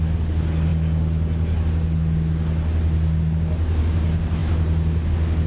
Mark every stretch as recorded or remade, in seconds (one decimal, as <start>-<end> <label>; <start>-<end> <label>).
0.0-5.5 recorded